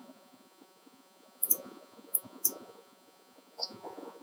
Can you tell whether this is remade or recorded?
remade